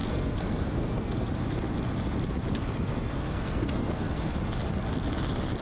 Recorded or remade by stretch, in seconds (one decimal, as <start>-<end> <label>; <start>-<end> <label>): 0.0-1.3 remade; 1.3-2.5 recorded; 2.5-4.3 remade; 4.3-5.6 recorded